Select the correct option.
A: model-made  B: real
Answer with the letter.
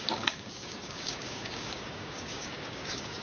A